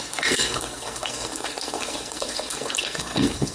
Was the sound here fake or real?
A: fake